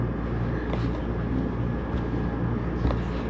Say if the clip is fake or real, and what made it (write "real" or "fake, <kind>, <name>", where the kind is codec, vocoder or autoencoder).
real